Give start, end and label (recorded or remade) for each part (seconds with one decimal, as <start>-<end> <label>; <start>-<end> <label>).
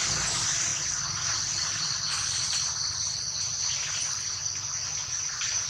0.0-5.7 recorded